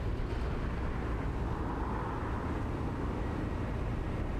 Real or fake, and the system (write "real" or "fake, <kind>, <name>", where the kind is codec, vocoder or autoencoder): real